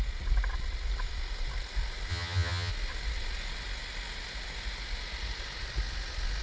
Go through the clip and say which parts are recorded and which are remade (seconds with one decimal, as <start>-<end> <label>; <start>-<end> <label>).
0.0-2.1 recorded; 2.1-2.7 remade; 2.7-6.4 recorded